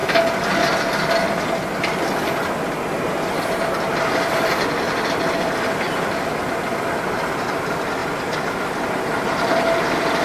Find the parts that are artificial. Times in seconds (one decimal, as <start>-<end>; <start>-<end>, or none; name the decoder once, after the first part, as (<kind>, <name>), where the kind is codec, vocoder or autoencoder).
8.0-9.5 (vocoder, BigVGAN v2)